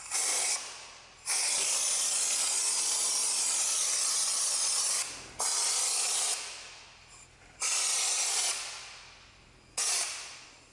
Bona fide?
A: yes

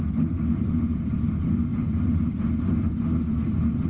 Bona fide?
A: yes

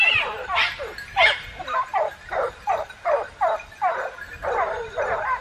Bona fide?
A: no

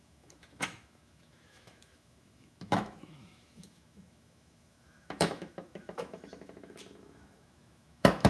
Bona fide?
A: no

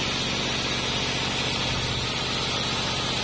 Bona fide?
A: yes